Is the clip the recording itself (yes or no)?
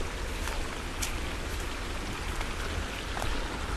yes